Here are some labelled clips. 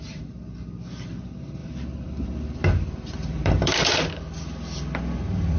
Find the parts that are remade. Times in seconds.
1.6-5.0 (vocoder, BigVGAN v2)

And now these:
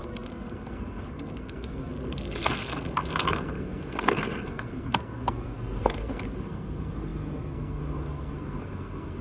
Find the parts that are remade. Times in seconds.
0.0-9.2 (codec, SNAC)

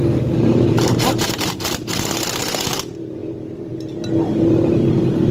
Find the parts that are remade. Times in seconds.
0.0-1.9 (vocoder, BigVGAN v2)

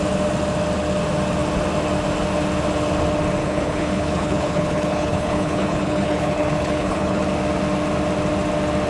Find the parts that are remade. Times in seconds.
3.4-7.2 (codec, HILCodec)

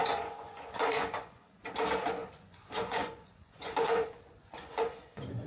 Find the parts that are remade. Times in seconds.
0.0-1.7 (vocoder, Vocos); 2.2-5.5